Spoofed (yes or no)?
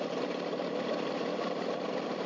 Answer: no